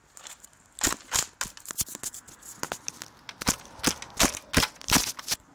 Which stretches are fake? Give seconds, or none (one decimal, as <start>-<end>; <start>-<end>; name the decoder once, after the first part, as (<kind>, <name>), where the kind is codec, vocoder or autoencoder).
none